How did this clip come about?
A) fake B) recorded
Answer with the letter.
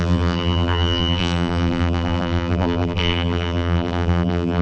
A